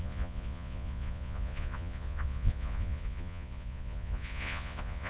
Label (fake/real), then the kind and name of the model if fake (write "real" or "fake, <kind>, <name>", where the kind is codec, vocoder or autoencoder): fake, vocoder, Vocos